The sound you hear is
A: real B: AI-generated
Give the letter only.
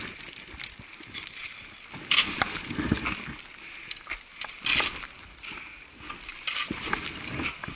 A